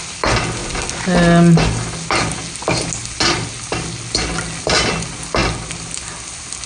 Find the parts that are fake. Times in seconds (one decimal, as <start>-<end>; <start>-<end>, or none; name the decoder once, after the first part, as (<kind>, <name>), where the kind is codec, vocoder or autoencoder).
none